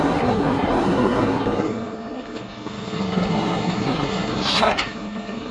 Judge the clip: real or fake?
fake